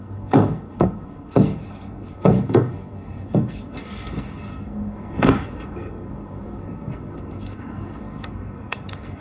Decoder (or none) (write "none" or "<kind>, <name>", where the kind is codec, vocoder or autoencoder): codec, SNAC